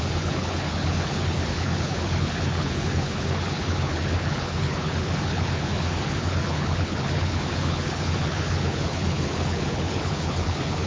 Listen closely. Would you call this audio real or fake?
fake